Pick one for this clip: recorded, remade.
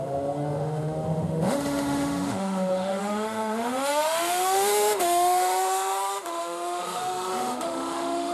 remade